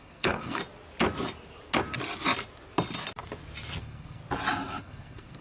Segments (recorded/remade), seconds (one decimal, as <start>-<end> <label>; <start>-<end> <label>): 0.0-0.6 remade; 0.6-3.8 recorded; 3.8-4.2 remade; 4.2-4.8 recorded; 4.8-5.4 remade